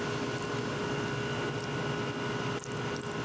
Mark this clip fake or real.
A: real